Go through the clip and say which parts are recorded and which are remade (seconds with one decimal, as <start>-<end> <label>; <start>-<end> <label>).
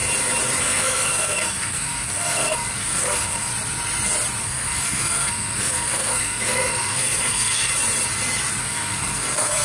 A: 0.0-0.6 recorded; 0.6-3.5 remade; 3.5-4.4 recorded; 4.4-7.7 remade; 7.7-8.6 recorded; 8.6-9.6 remade